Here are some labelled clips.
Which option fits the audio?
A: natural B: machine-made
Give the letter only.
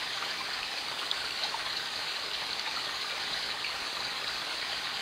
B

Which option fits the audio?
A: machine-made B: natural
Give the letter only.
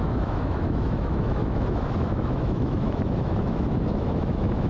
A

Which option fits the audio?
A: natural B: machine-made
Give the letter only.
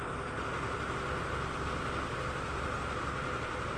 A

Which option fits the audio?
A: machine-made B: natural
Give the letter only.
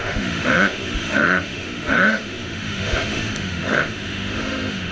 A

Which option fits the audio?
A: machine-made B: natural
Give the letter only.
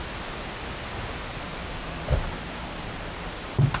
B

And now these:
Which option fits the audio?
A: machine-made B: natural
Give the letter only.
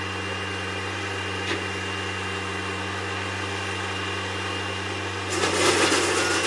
B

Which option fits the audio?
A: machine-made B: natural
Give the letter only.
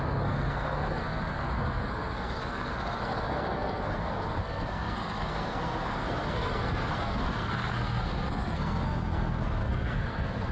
A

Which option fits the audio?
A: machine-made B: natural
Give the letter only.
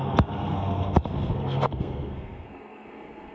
A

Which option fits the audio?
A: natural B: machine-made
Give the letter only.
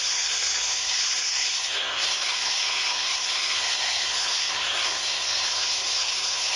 B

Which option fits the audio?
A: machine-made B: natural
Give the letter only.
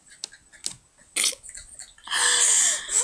B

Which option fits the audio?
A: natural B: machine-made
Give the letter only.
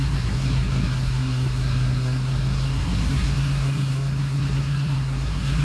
B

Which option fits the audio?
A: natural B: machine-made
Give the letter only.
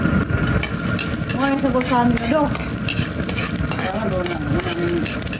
A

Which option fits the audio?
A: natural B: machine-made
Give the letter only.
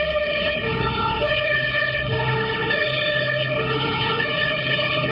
B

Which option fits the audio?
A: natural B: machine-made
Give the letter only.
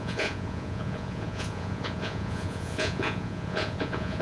B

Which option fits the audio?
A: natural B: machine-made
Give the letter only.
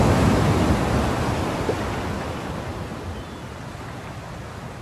A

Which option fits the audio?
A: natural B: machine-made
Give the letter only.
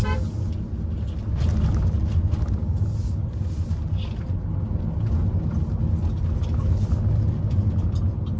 A